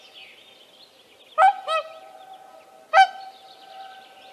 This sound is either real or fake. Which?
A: real